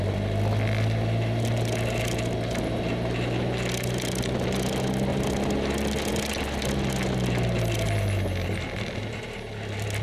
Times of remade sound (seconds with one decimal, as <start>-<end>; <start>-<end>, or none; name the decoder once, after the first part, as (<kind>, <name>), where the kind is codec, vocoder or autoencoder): none